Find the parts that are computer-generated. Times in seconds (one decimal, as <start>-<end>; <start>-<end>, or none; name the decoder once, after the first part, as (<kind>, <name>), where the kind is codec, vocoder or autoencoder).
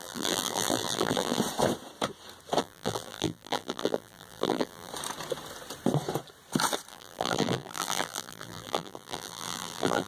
0.0-1.4 (vocoder, BigVGAN v2); 2.6-4.9; 6.9-10.1